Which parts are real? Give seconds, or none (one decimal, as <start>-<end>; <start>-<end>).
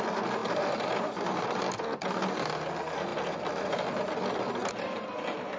0.0-5.6